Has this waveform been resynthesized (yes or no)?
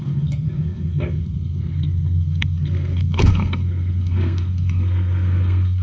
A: yes